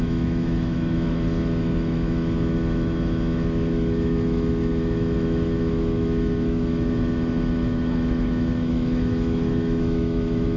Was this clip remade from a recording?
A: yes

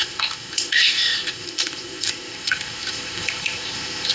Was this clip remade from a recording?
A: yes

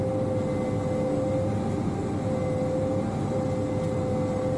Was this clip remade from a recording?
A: no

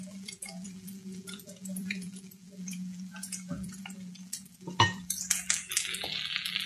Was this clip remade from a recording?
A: yes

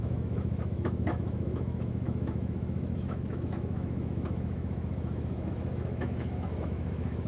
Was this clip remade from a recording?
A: yes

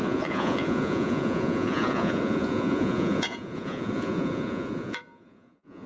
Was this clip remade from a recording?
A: yes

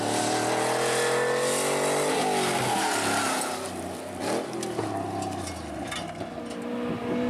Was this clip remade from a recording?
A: no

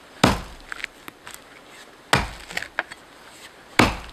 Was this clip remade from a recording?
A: no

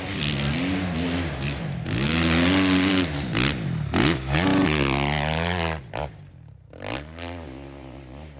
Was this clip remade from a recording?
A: no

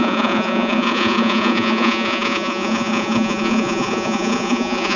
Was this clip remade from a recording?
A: yes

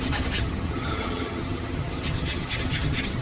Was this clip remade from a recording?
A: yes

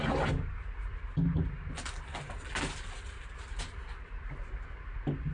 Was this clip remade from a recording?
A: no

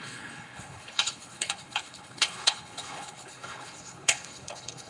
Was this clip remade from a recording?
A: yes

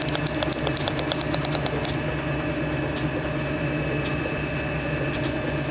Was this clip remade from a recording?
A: no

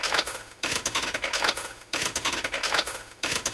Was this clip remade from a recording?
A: yes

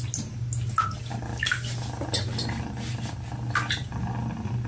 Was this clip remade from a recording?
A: no